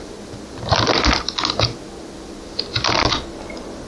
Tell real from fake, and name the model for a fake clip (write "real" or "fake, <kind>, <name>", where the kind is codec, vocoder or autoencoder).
real